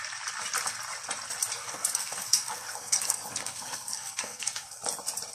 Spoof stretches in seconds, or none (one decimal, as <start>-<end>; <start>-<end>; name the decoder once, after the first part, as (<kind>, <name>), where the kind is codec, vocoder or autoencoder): 1.6-4.8 (codec, SNAC)